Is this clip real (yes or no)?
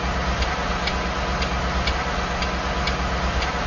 yes